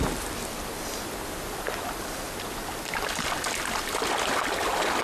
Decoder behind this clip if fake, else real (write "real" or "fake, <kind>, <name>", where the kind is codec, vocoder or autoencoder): real